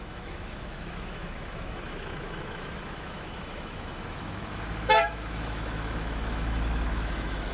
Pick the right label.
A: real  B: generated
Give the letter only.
B